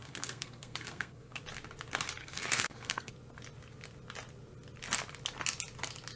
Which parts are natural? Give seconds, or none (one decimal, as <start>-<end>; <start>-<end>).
1.4-2.2; 3.1-6.2